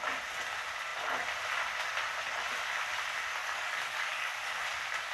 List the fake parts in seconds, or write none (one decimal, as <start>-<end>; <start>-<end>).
3.4-4.5